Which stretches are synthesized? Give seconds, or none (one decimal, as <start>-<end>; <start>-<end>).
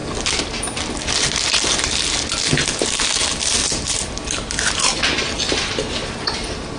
none